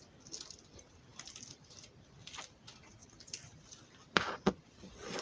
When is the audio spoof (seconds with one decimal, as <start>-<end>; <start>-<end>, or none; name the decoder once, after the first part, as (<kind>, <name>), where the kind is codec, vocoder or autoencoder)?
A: 3.0-3.7 (vocoder, BigVGAN v2)